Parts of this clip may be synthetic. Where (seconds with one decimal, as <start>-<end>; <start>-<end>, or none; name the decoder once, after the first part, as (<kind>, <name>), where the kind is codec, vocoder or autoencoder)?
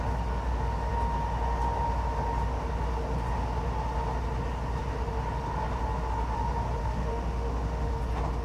6.8-7.9 (autoencoder, DAC-VAE)